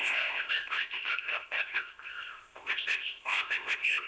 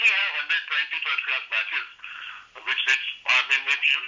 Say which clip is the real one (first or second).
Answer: second